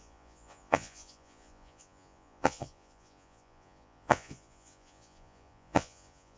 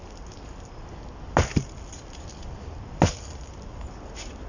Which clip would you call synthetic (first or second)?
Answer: first